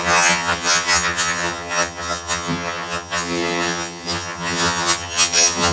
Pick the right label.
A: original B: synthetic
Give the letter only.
B